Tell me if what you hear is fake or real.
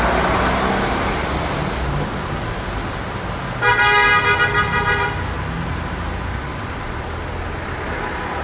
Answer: real